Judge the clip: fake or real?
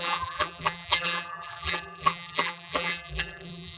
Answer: fake